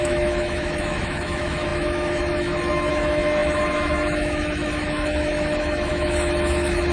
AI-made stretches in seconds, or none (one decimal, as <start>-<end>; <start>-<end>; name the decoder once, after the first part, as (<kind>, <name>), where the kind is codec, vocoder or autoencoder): 0.0-6.9 (autoencoder, DAC-VAE)